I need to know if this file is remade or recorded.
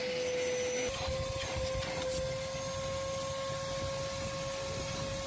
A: recorded